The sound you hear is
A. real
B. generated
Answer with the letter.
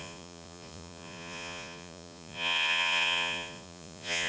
B